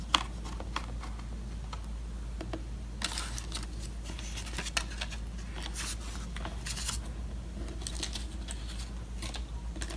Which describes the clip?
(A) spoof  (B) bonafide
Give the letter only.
B